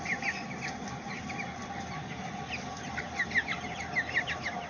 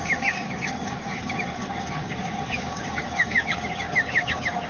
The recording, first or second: first